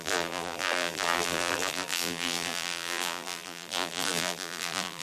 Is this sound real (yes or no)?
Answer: no